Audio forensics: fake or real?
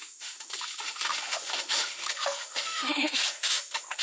fake